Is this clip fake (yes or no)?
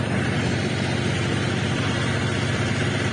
yes